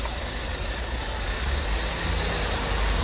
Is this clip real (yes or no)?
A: yes